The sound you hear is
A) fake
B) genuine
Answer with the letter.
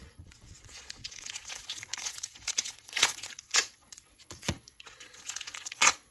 A